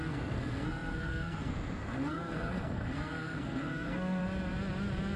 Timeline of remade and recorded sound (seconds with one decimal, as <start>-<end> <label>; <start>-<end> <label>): 0.0-4.2 remade; 4.2-5.2 recorded